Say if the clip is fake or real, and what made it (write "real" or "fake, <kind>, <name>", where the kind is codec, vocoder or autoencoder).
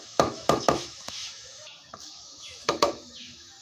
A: fake, autoencoder, DAC-VAE